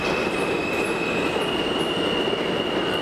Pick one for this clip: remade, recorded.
recorded